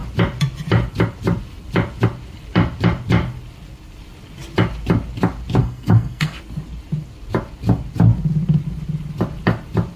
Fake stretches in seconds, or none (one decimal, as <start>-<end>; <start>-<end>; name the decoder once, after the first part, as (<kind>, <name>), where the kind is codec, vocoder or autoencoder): 5.6-6.4 (codec, SNAC)